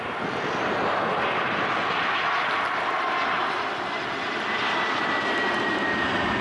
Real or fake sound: real